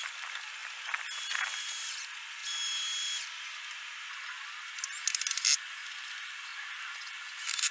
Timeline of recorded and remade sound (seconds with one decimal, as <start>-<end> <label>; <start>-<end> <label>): 0.0-2.4 remade; 2.4-5.8 recorded; 5.8-6.5 remade; 6.5-7.1 recorded; 7.1-7.7 remade